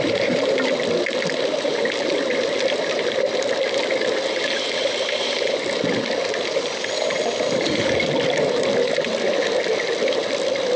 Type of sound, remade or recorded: recorded